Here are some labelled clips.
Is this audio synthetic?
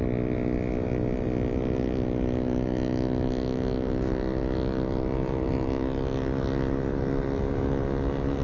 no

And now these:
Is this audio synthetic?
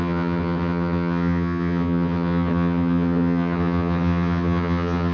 yes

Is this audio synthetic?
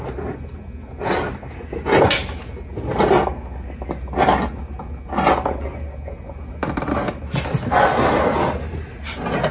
no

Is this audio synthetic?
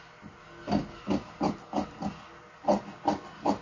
no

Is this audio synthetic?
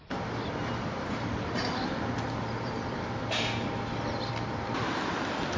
no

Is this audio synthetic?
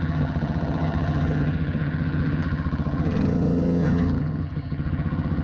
yes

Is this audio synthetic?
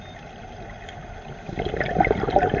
no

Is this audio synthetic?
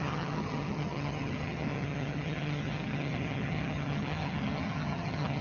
yes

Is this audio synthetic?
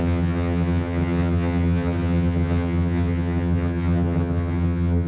yes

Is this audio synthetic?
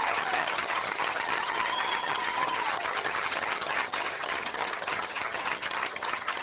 yes